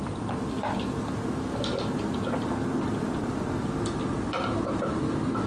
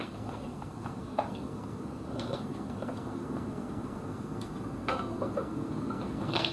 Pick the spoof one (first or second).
second